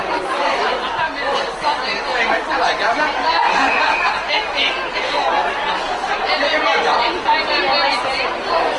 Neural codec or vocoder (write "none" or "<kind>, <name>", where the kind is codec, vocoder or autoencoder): none